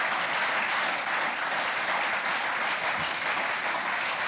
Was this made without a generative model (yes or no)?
yes